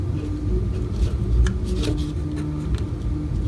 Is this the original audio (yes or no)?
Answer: yes